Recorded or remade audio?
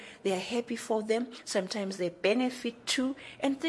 remade